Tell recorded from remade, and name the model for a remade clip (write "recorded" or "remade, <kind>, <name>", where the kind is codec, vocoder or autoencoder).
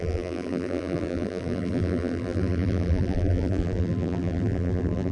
remade, vocoder, BigVGAN v2